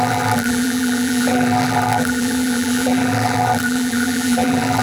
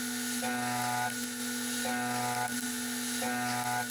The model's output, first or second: first